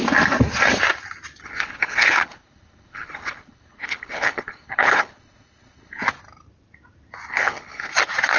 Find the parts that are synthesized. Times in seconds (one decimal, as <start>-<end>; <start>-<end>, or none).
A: 1.4-6.0; 7.3-7.9